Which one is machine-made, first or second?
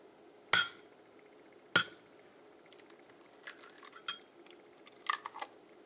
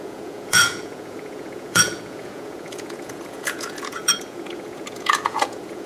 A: second